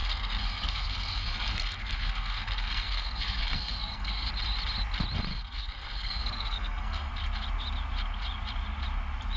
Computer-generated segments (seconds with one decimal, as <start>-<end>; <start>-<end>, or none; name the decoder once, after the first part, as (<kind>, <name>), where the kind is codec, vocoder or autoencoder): 0.0-4.3 (codec, SNAC); 5.3-7.1